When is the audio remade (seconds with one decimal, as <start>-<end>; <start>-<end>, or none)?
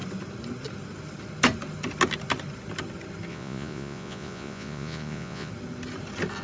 3.3-5.5